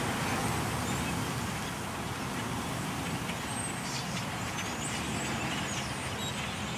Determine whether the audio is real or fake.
real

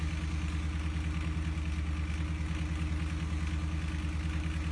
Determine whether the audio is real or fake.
real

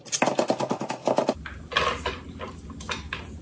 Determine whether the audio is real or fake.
real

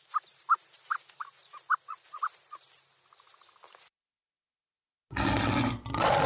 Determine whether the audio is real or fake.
real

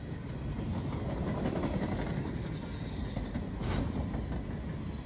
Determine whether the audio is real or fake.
real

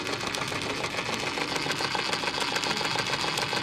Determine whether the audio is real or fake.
real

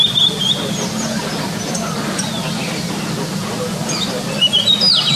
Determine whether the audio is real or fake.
real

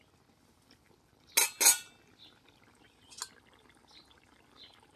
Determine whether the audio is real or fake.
real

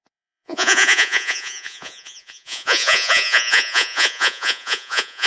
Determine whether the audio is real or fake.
fake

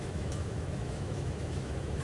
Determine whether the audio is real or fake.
fake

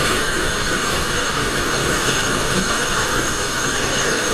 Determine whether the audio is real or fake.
fake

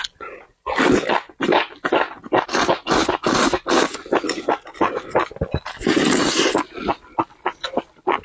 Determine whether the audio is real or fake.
real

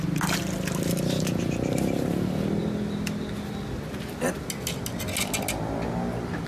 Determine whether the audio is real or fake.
real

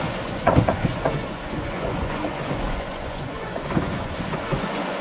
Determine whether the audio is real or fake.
fake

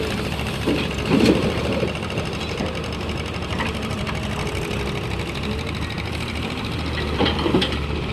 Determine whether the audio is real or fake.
fake